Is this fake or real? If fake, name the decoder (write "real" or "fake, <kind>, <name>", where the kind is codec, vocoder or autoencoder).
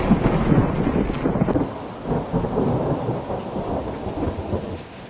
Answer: real